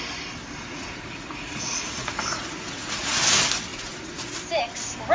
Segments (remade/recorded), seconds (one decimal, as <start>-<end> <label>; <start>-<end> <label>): 0.0-0.7 recorded; 0.7-3.2 remade; 3.2-3.7 recorded; 3.7-4.4 remade; 4.4-5.1 recorded